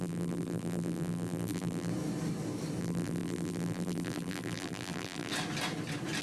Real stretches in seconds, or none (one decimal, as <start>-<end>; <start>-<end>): 1.9-2.8; 5.3-6.2

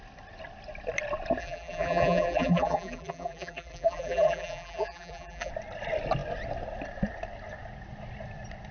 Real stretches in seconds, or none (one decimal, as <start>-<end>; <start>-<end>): 0.0-1.4; 5.5-8.7

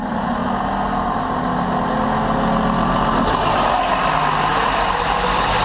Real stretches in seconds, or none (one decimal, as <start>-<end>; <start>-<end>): 0.0-4.5; 5.0-5.6

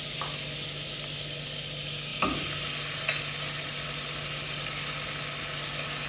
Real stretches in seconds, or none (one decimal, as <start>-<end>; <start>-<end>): 0.0-6.1

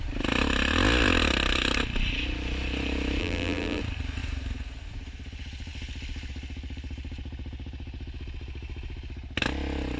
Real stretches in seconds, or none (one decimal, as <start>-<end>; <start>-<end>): 0.0-3.2; 3.8-10.0

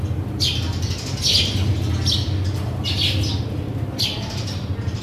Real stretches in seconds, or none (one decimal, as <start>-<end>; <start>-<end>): 0.0-1.7

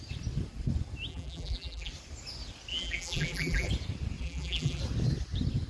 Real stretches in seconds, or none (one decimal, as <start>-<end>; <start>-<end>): 0.0-1.1; 1.9-2.7; 3.7-4.2; 4.8-5.7